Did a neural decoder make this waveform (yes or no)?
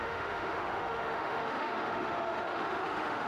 yes